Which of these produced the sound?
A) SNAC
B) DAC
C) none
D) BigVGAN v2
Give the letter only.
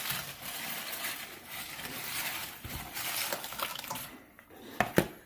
C